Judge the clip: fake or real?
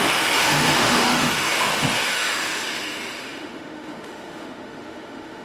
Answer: fake